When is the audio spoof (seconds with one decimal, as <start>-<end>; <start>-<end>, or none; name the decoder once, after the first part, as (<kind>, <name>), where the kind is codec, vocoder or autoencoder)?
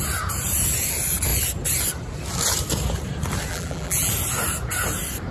3.5-4.1 (vocoder, BigVGAN v2)